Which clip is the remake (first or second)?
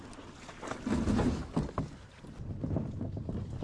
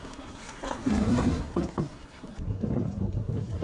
second